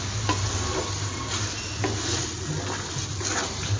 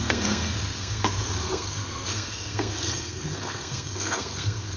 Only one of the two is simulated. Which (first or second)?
second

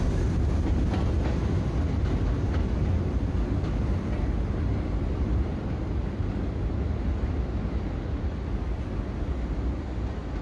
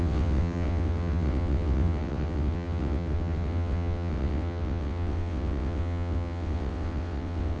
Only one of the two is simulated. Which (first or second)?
second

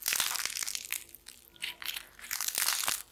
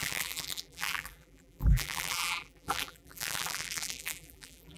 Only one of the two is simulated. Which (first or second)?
second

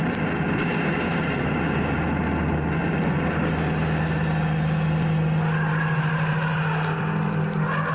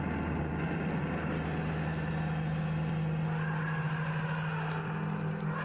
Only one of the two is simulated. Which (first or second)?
first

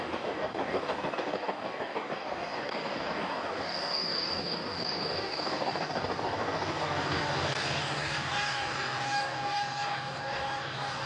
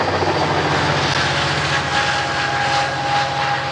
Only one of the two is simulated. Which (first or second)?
first